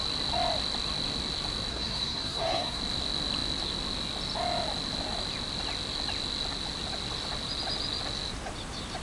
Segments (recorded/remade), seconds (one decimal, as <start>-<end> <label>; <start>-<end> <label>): 0.0-1.7 recorded; 1.7-2.8 remade; 2.8-9.0 recorded